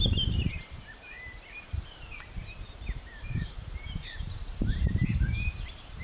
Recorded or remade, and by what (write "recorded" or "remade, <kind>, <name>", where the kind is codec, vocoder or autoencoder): remade, vocoder, BigVGAN v2